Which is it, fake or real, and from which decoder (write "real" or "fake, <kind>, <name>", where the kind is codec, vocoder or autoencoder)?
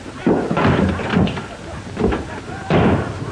real